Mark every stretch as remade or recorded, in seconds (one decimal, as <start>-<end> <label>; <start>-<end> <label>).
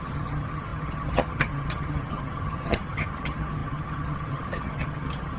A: 0.0-5.4 remade